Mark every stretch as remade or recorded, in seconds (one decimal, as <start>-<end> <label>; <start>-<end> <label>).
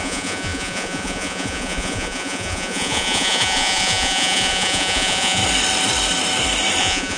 0.0-5.4 remade; 5.4-6.8 recorded; 6.8-7.2 remade